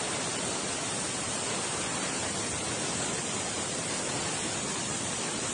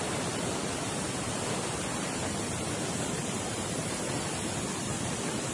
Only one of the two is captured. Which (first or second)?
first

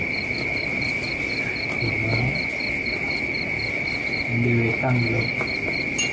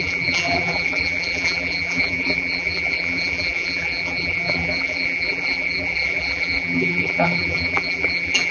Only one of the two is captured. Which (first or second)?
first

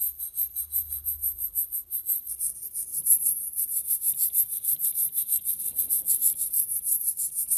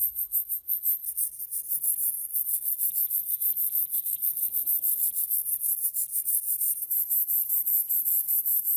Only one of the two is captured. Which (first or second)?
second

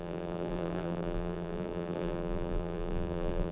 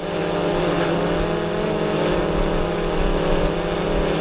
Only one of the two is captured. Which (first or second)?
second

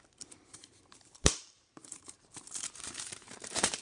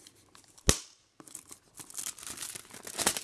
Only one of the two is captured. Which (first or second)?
second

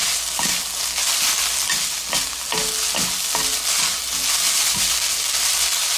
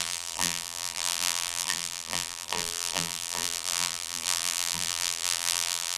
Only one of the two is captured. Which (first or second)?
first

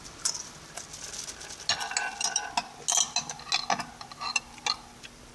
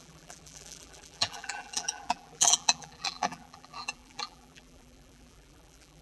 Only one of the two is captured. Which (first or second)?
first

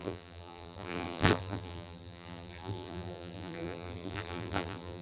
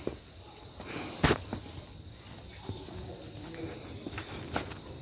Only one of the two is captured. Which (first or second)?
second